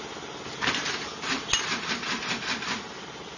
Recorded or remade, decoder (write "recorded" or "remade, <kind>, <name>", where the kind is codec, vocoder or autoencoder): recorded